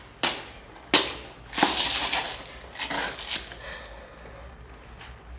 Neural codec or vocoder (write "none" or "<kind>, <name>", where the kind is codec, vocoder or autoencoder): none